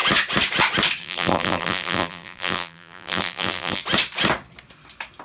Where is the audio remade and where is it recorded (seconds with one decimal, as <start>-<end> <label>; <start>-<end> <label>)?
0.0-1.0 recorded; 1.0-3.8 remade; 3.8-5.2 recorded